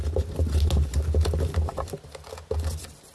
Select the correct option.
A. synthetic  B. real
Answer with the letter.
B